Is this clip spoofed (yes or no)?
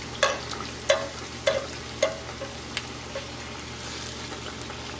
no